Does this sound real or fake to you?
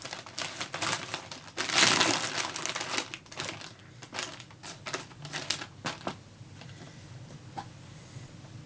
real